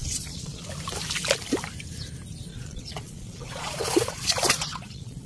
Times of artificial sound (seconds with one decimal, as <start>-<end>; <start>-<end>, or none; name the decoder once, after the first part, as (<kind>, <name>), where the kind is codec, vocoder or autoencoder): 0.0-0.7 (vocoder, Vocos); 2.5-5.3